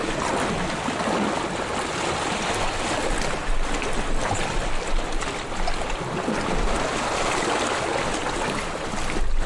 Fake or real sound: real